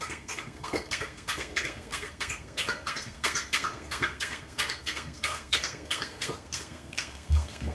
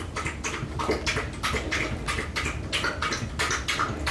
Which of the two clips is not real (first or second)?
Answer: first